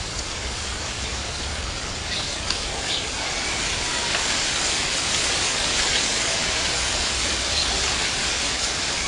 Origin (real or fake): fake